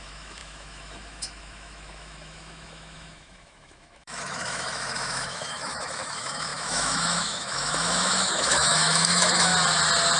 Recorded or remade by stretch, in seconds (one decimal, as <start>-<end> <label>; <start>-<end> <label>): 0.0-9.5 remade; 9.5-10.2 recorded